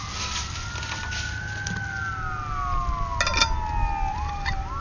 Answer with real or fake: real